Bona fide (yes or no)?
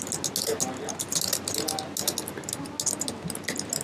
yes